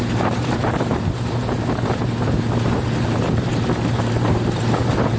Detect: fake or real fake